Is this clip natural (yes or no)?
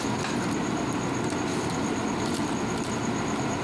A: yes